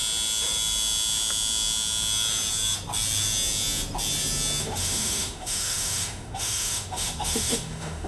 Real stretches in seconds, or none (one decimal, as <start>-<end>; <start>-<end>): 0.0-4.6